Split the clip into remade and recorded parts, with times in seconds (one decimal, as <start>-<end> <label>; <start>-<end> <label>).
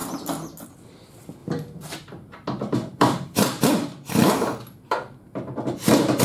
0.0-1.4 recorded; 1.4-3.6 remade; 3.6-4.2 recorded; 4.2-5.5 remade; 5.5-6.2 recorded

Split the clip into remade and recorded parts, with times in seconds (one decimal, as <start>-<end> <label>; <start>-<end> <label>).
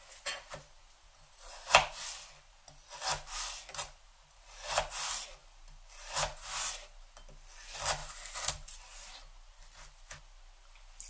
0.0-11.1 recorded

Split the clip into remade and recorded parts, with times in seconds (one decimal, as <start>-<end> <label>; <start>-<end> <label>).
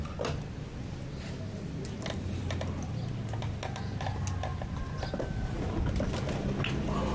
0.0-7.1 recorded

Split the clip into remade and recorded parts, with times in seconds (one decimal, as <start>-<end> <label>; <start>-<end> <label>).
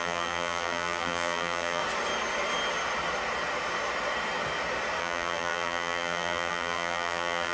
0.0-1.8 remade; 1.8-5.0 recorded; 5.0-7.5 remade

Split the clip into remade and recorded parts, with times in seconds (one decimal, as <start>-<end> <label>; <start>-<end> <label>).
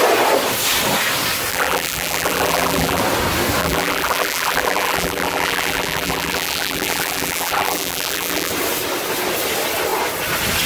0.0-1.5 recorded; 1.5-3.0 remade; 3.0-3.6 recorded; 3.6-8.5 remade; 8.5-10.7 recorded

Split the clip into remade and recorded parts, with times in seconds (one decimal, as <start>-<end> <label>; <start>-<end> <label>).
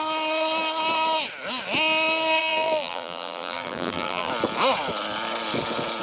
0.0-2.4 recorded; 2.4-4.3 remade; 4.3-6.0 recorded